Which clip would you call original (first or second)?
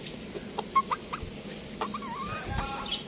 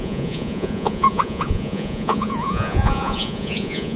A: first